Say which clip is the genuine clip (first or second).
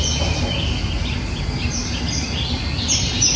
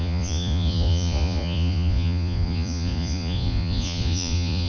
first